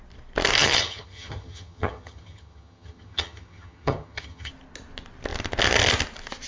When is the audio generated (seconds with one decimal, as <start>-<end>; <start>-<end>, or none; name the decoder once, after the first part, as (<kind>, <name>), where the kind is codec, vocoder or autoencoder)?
0.6-4.5 (vocoder, HiFi-GAN)